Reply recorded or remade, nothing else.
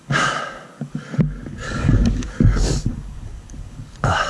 remade